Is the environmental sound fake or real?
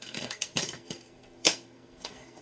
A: fake